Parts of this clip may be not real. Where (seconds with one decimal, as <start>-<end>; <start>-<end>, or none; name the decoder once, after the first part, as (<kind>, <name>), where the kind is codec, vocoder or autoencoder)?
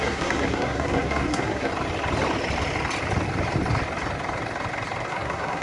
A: 0.0-1.7 (codec, SNAC); 5.1-5.6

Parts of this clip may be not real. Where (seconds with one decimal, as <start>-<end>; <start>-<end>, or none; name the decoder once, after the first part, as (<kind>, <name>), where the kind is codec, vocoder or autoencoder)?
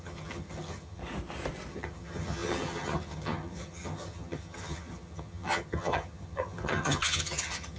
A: 0.0-1.0 (vocoder, HiFi-GAN); 1.7-7.8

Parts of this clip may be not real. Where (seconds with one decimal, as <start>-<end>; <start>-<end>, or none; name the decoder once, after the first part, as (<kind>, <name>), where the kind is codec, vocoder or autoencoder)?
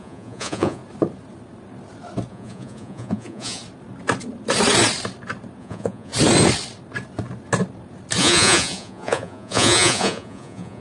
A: 0.0-0.8 (vocoder, Vocos); 2.3-3.6; 5.6-6.1; 8.2-10.8